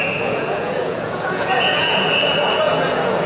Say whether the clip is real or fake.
fake